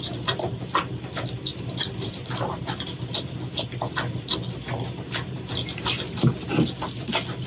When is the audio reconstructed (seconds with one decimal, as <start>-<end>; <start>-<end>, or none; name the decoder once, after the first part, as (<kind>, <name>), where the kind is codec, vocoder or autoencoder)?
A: 1.5-2.5 (vocoder, BigVGAN v2)